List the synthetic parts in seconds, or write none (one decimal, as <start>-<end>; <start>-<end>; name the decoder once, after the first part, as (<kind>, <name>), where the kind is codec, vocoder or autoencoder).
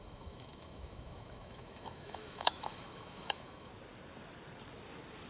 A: 0.0-3.7 (autoencoder, DAC-VAE)